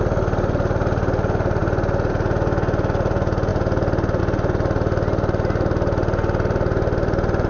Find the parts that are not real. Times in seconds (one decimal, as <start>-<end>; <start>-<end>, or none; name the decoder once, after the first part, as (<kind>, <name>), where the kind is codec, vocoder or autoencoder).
none